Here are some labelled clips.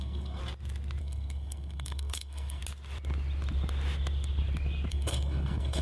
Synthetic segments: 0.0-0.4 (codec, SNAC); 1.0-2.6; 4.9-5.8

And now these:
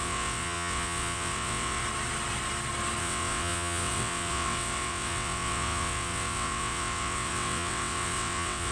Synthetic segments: 0.0-1.8 (vocoder, WaveNeXt); 3.0-8.7

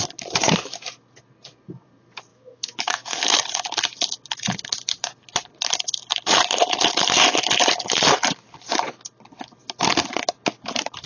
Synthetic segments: 2.3-3.2 (autoencoder, DAC-VAE)

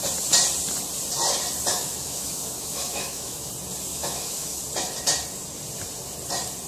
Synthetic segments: 1.7-3.5 (autoencoder, DAC-VAE); 3.9-4.6

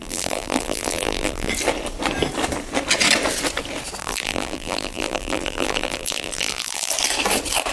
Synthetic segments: 0.0-1.5 (vocoder, BigVGAN v2); 4.0-6.9

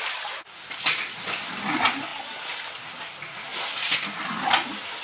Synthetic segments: none